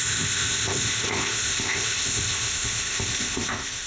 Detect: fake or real fake